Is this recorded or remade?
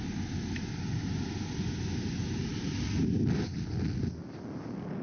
recorded